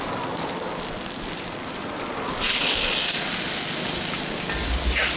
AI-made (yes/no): no